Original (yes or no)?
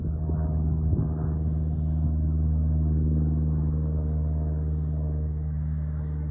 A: yes